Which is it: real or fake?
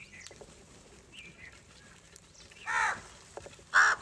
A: real